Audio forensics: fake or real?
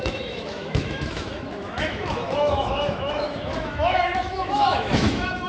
fake